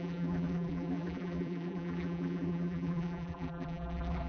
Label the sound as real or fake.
fake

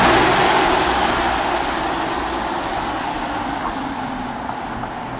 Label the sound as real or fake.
real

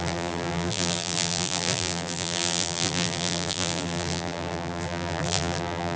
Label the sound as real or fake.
fake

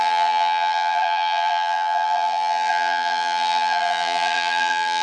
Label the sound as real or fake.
fake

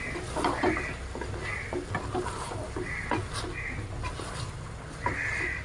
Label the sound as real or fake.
real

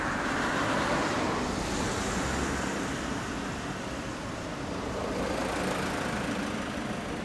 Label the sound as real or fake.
real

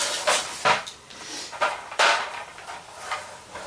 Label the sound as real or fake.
fake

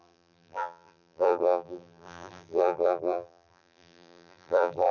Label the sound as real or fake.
fake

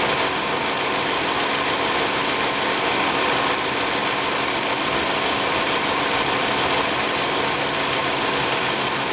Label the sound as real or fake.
real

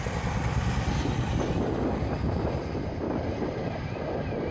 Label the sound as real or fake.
real